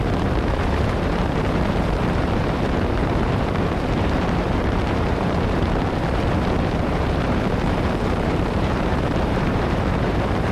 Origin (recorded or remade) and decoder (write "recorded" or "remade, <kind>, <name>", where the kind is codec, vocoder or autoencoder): remade, vocoder, BigVGAN v2